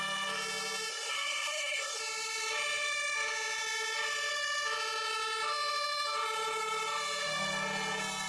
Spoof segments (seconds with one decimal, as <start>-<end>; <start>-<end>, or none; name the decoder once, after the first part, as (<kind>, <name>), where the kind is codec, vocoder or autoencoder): 0.9-2.0 (codec, SNAC)

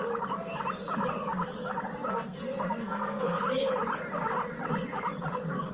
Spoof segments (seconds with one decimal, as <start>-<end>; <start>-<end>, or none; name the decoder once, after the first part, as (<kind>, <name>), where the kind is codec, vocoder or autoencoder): 2.1-3.4 (codec, SNAC)

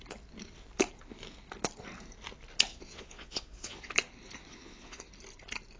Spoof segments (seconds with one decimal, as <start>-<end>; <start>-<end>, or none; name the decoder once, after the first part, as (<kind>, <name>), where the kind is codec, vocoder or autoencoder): 2.7-3.9 (vocoder, Vocos); 4.5-5.1

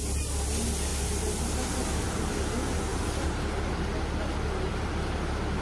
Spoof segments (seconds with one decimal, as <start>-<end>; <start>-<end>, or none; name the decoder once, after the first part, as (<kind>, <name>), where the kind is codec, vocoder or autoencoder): 0.9-2.2 (vocoder, BigVGAN v2); 2.9-4.9